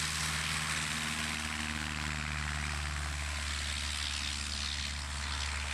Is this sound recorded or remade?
recorded